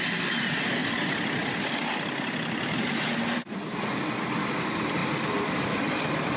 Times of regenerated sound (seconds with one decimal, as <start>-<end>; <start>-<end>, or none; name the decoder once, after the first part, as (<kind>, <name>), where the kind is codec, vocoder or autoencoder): none